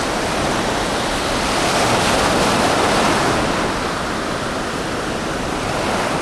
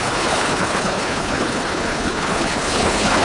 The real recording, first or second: first